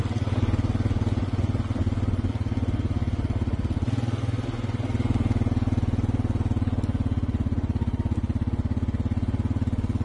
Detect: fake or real real